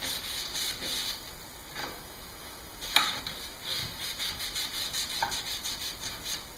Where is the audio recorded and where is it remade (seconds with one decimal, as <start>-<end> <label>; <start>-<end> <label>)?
0.0-1.8 recorded; 1.8-3.2 remade; 3.2-3.8 recorded; 3.8-4.4 remade; 4.4-6.6 recorded